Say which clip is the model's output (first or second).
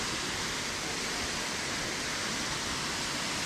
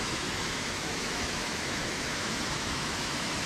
second